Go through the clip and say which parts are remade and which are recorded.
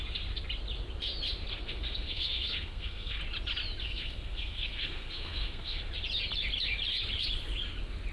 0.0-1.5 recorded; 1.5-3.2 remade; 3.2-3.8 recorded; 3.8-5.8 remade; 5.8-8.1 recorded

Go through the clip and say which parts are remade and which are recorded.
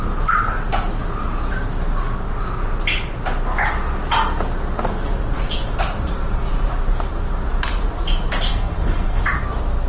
0.0-8.5 recorded; 8.5-9.2 remade; 9.2-9.9 recorded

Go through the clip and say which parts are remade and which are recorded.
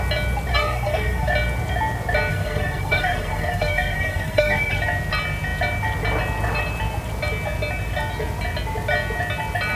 0.0-0.5 recorded; 0.5-1.3 remade; 1.3-2.3 recorded; 2.3-4.8 remade; 4.8-9.7 recorded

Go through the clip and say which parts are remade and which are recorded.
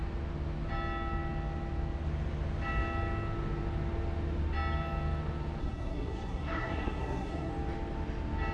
0.0-5.6 recorded; 5.6-7.5 remade; 7.5-8.5 recorded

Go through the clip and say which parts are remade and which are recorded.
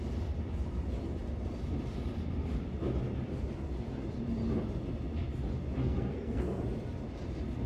0.0-5.8 recorded; 5.8-6.6 remade; 6.6-7.7 recorded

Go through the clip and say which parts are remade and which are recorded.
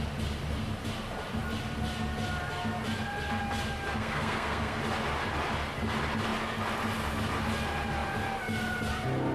0.0-4.0 recorded; 4.0-4.8 remade; 4.8-9.3 recorded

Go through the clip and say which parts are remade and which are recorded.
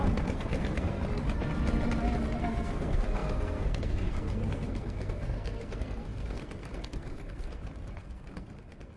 0.0-1.0 remade; 1.0-2.4 recorded; 2.4-9.0 remade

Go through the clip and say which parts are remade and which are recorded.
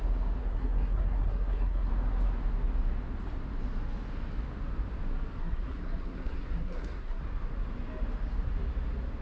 0.0-0.4 recorded; 0.4-1.9 remade; 1.9-5.4 recorded; 5.4-7.2 remade; 7.2-9.2 recorded